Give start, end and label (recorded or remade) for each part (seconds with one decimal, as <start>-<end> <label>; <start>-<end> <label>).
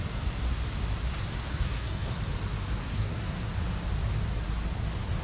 0.0-1.5 recorded; 1.5-2.2 remade; 2.2-2.8 recorded; 2.8-3.5 remade; 3.5-5.2 recorded